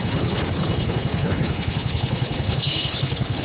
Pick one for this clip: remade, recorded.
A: remade